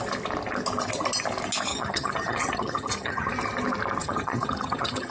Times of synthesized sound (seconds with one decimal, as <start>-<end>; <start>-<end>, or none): 1.7-3.3; 4.0-5.1